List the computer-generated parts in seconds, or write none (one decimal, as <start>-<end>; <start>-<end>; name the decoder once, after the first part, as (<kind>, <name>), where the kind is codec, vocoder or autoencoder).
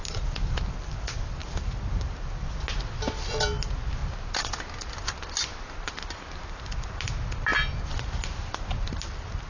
none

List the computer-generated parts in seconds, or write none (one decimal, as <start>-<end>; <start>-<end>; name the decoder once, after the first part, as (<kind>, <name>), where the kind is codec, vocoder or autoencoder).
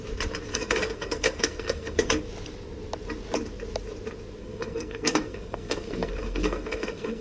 0.5-2.2 (codec, SNAC); 4.4-7.2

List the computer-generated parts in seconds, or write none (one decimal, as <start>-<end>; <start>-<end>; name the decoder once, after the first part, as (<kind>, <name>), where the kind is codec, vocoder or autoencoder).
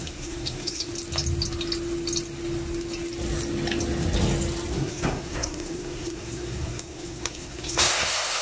0.0-0.9 (codec, SNAC); 4.7-8.4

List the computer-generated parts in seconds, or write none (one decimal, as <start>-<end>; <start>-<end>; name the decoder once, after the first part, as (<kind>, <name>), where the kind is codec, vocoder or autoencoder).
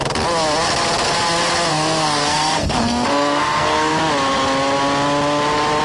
1.7-4.0 (codec, SNAC)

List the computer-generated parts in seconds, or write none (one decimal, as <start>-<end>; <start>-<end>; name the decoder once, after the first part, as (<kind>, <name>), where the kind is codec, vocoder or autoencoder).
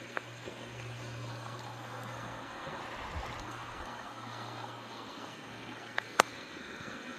0.0-2.8 (codec, SNAC); 3.4-7.2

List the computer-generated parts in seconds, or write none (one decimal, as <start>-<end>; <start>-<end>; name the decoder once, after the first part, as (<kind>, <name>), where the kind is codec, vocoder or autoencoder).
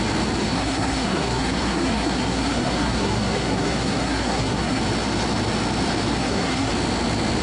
0.4-4.8 (codec, SNAC); 6.2-6.7